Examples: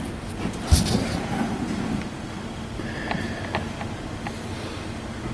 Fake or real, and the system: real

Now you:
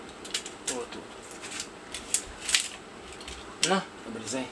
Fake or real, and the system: real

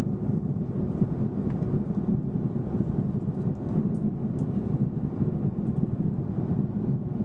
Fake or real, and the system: real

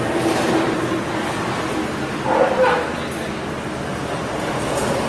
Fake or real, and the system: real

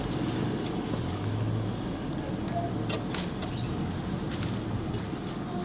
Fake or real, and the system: real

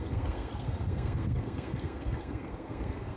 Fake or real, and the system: fake, codec, SNAC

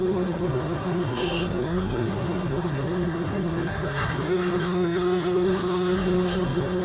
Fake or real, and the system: fake, codec, SNAC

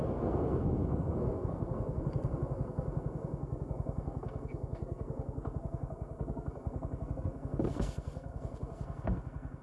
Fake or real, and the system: fake, codec, SNAC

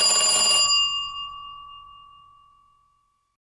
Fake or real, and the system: real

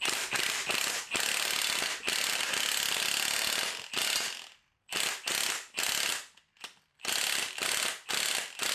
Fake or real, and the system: real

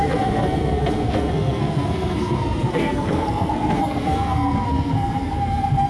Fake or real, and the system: fake, codec, SNAC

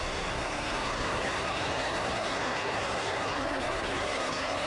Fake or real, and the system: fake, codec, SNAC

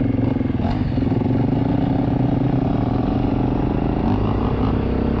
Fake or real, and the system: real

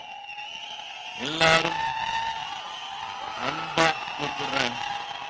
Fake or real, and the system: real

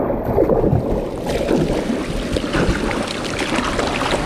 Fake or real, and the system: real